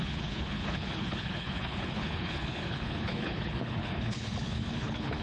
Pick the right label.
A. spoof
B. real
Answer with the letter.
A